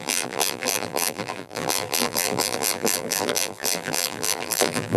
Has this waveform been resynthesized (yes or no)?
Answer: yes